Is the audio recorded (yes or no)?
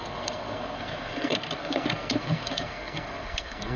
no